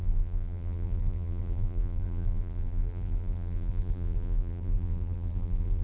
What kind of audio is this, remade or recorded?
remade